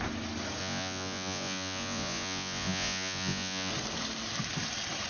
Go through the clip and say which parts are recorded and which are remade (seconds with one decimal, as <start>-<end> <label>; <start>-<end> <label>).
0.0-0.6 recorded; 0.6-3.7 remade; 3.7-5.1 recorded